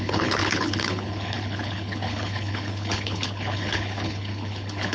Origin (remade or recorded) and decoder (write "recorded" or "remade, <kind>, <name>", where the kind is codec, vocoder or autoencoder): remade, codec, HILCodec